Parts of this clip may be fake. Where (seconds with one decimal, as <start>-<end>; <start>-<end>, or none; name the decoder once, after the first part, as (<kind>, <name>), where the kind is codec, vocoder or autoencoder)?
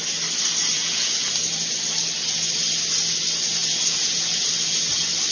0.7-1.3 (vocoder, Vocos); 3.6-4.5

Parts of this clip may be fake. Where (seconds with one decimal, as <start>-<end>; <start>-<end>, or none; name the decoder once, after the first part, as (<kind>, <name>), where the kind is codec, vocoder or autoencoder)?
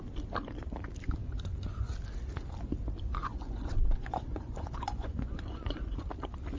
1.2-1.9 (vocoder, Vocos); 3.2-6.0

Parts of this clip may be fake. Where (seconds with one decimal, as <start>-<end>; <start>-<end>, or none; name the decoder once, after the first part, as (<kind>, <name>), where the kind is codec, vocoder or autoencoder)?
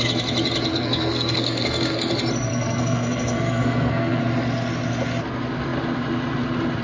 0.7-2.1 (codec, SNAC); 2.5-4.2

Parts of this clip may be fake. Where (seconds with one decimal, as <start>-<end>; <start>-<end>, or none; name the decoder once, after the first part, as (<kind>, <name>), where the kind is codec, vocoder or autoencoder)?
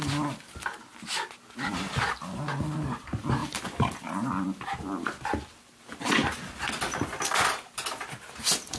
3.4-4.8 (vocoder, BigVGAN v2)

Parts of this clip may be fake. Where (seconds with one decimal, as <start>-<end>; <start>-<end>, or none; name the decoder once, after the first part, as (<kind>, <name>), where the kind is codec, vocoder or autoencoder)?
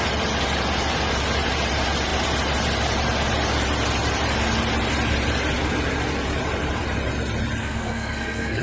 7.6-8.6 (codec, SNAC)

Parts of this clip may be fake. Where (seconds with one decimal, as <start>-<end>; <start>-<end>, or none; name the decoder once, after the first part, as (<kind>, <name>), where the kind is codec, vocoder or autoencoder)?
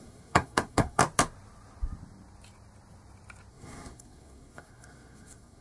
0.0-1.0 (codec, SNAC); 3.5-5.6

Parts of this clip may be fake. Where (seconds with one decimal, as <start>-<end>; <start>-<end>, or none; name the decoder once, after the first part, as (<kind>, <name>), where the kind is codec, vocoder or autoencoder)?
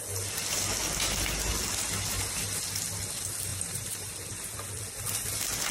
3.5-4.1 (vocoder, BigVGAN v2)